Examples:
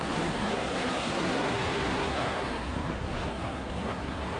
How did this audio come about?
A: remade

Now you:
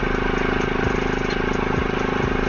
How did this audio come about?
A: recorded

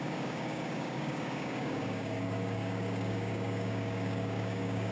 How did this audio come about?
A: remade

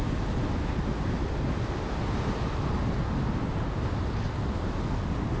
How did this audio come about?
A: recorded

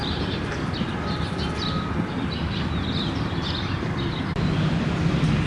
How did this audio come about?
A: remade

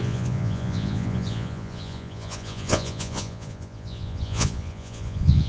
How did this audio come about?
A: remade